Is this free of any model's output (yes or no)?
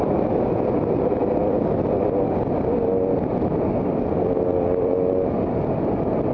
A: yes